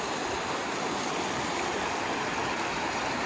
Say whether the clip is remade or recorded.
recorded